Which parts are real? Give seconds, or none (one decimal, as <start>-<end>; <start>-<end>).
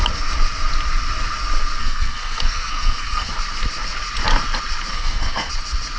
0.0-1.8; 3.3-4.9; 5.5-6.0